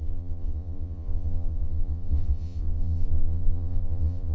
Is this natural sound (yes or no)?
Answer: no